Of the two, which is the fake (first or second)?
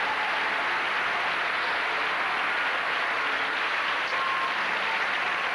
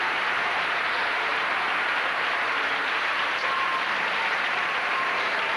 second